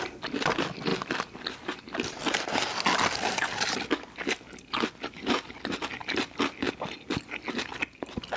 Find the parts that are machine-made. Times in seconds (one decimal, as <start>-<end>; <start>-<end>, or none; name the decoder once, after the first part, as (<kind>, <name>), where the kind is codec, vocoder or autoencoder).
none